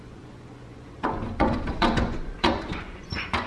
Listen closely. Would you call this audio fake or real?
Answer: fake